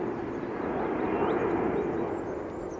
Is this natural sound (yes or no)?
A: yes